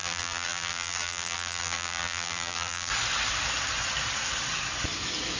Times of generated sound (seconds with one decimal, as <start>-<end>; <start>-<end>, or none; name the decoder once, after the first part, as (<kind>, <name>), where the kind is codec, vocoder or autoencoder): 0.0-2.9 (vocoder, BigVGAN v2)